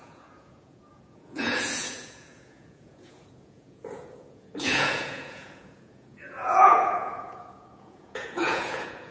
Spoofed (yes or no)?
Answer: yes